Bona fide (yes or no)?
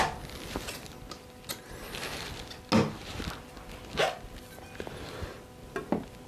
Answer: yes